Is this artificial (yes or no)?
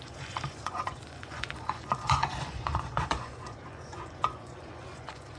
yes